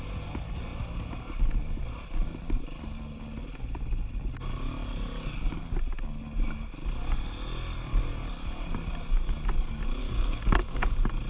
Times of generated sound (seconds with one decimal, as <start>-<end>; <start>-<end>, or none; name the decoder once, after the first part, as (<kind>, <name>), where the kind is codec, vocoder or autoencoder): 10.0-10.9 (codec, DAC)